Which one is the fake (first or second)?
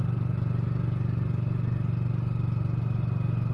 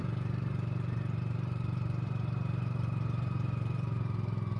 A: second